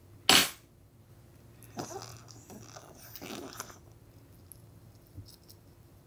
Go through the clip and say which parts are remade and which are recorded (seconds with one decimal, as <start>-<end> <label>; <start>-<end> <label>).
0.0-6.1 recorded